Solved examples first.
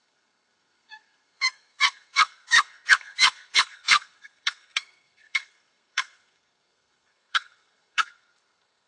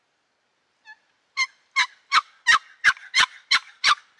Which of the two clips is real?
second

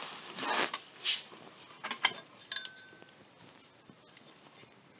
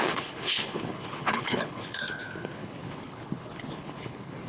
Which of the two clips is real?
first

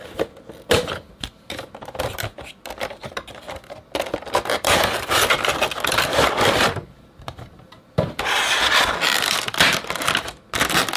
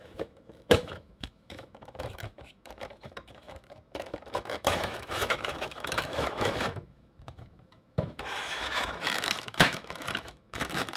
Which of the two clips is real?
first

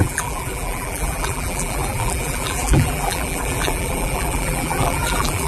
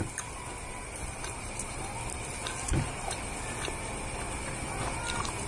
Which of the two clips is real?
second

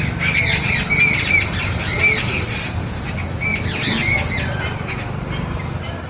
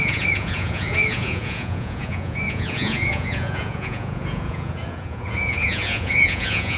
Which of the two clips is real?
first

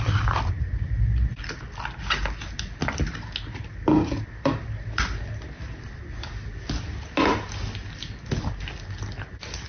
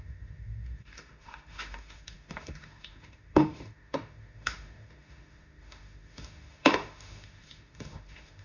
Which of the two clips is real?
first